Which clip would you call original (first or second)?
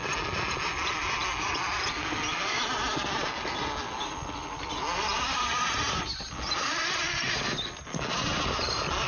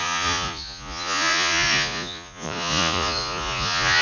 first